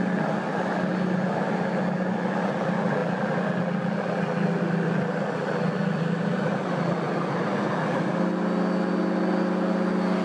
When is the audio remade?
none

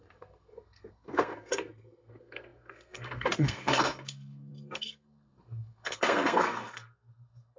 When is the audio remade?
0.0-7.6 (codec, SNAC)

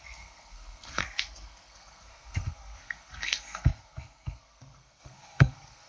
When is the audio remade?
0.0-5.9 (codec, SNAC)

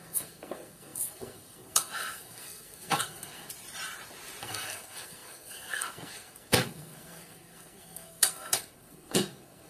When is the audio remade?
0.0-3.5 (codec, SNAC); 4.4-9.7

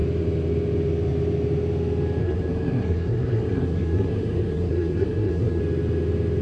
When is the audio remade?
2.2-5.6 (codec, SNAC)

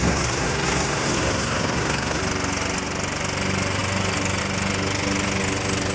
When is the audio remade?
0.0-2.2 (codec, SNAC)

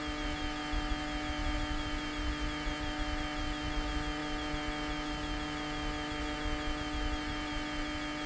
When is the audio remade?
none

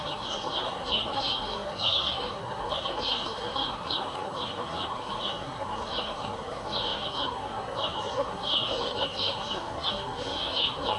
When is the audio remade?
0.0-11.0 (codec, SNAC)